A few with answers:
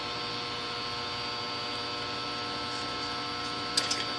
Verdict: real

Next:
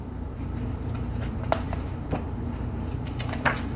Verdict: fake